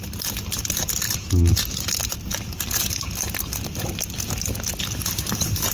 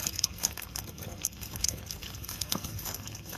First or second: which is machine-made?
second